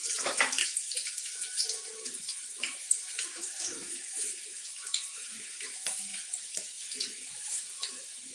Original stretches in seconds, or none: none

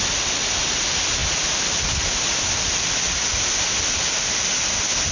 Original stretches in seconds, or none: 0.0-5.1